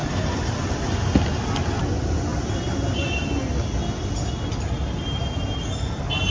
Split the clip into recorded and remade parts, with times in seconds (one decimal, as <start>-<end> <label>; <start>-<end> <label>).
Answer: 0.0-0.9 remade; 0.9-6.3 recorded